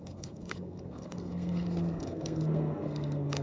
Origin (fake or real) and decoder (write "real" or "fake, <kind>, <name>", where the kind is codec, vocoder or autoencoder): fake, codec, SNAC